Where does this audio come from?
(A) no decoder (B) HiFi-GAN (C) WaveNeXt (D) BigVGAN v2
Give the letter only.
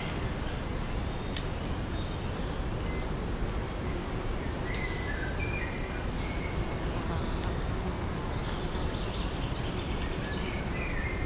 A